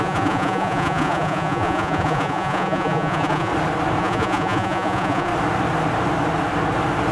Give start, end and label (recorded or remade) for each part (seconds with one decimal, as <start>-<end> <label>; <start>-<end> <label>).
0.0-3.5 remade; 3.5-4.0 recorded; 4.0-5.3 remade; 5.3-7.1 recorded